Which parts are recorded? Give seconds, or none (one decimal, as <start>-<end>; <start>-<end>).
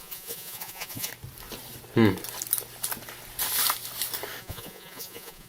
1.1-4.4